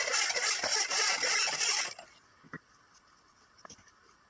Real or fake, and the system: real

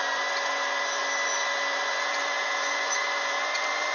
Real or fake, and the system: fake, vocoder, Vocos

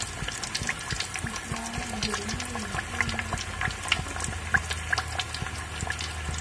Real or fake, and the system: real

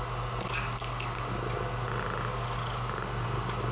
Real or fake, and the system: real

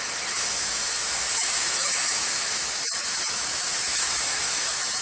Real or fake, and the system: fake, autoencoder, DAC-VAE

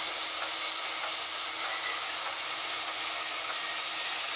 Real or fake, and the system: real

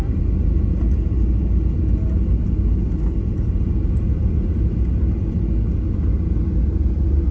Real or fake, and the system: real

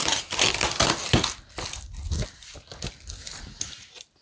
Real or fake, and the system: real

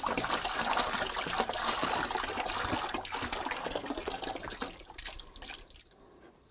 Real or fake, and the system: real